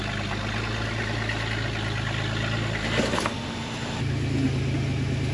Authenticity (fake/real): real